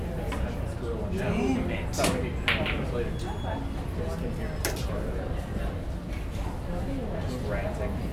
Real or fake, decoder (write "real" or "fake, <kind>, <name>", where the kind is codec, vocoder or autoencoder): real